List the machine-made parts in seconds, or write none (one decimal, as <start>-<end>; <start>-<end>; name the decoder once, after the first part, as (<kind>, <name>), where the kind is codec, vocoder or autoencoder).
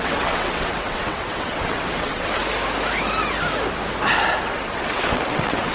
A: 0.0-2.4 (vocoder, WaveNeXt); 4.4-5.7